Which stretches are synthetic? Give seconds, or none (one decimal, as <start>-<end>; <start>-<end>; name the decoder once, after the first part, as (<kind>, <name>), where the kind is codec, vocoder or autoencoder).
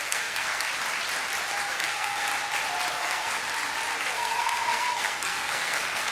0.0-0.7 (codec, SNAC); 1.7-2.3; 2.9-3.4; 4.0-6.1